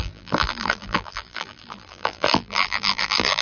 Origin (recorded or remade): remade